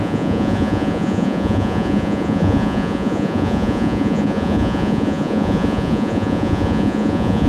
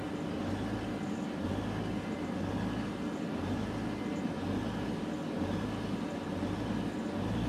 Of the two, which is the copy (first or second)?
first